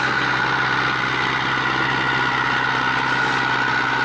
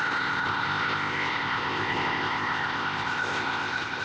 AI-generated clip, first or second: second